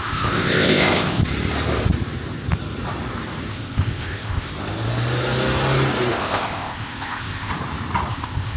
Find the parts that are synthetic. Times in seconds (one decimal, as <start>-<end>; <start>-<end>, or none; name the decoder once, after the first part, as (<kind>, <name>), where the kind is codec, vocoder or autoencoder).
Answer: 0.0-1.2 (codec, ZipCodec); 3.5-4.5; 6.1-7.5; 8.1-8.6